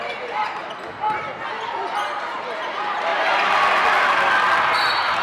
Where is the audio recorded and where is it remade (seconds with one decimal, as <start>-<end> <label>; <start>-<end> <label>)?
0.0-0.6 remade; 0.6-2.2 recorded; 2.2-3.1 remade; 3.1-4.8 recorded; 4.8-5.2 remade